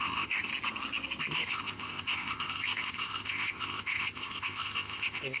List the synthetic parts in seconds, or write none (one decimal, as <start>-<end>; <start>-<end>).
0.0-0.5; 1.2-5.4